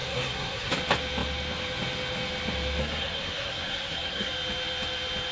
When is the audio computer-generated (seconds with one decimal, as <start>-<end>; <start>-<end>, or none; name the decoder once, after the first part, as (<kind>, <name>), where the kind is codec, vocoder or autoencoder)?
0.0-0.7 (codec, SNAC); 2.8-4.3